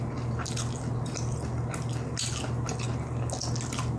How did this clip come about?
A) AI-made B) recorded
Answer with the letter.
B